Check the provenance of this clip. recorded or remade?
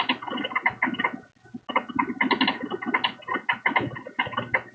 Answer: recorded